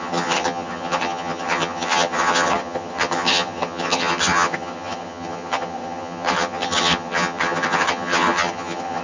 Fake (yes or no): yes